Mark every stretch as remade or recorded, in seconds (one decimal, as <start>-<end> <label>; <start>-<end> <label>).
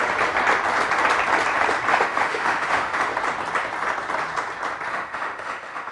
0.0-1.9 recorded; 1.9-3.1 remade; 3.1-4.9 recorded; 4.9-5.9 remade